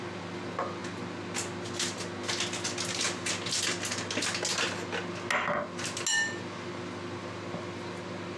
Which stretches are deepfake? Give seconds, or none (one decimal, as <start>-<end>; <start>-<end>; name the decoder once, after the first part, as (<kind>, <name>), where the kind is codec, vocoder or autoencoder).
none